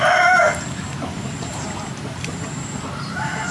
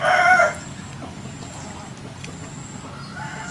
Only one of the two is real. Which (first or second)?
second